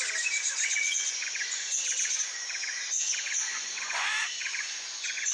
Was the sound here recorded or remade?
remade